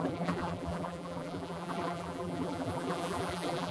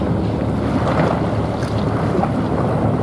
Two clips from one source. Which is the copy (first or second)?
first